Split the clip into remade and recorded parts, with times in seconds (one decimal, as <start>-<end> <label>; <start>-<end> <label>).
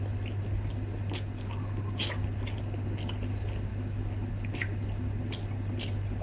0.0-6.2 recorded